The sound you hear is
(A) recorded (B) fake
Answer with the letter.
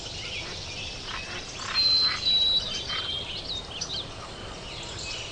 A